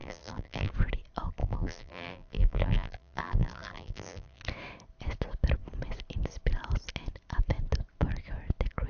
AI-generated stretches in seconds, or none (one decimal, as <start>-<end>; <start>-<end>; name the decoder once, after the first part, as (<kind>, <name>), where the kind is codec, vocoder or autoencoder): 0.0-0.7 (vocoder, BigVGAN v2); 1.4-4.4